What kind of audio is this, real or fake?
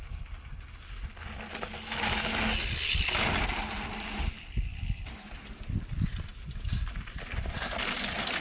real